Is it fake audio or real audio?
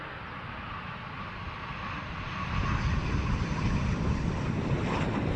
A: real